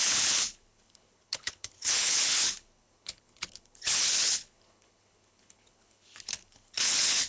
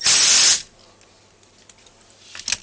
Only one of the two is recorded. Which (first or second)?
second